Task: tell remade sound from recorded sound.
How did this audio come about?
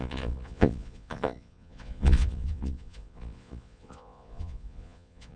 remade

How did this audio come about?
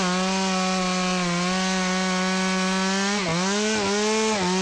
recorded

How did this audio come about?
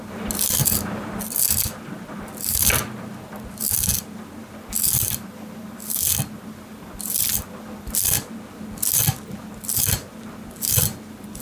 remade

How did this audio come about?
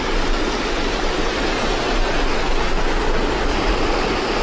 recorded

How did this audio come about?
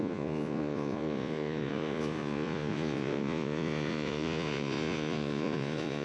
remade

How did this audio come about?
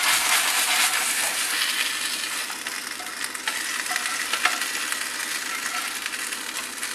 recorded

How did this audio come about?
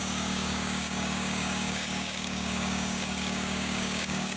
remade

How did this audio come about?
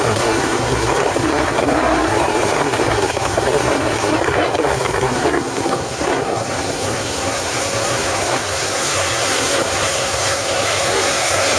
remade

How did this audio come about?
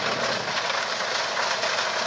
recorded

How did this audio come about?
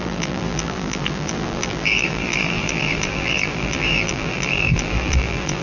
remade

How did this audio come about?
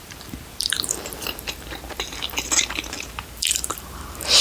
remade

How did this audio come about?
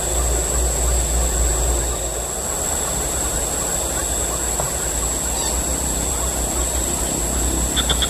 recorded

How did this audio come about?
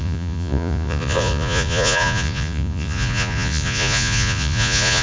remade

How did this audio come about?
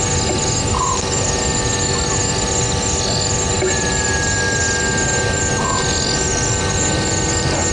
recorded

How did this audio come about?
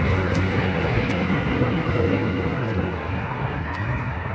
remade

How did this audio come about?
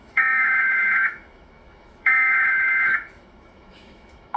remade